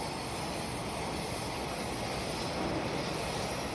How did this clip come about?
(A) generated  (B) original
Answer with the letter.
B